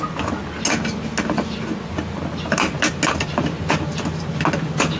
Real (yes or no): yes